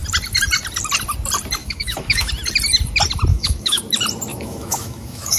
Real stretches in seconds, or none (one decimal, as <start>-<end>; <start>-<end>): 0.0-1.6; 2.3-3.3; 3.8-4.3